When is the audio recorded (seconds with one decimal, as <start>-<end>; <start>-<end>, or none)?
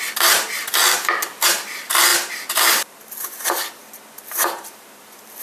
0.0-5.4